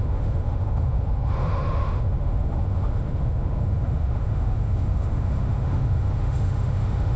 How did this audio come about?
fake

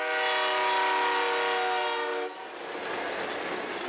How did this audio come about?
real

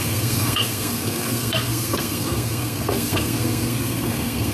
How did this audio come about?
fake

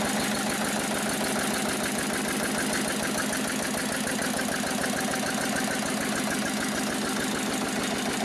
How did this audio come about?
real